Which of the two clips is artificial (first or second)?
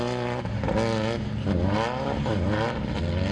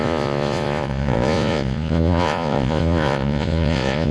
second